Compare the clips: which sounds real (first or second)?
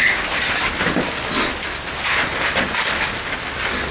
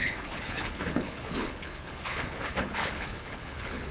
first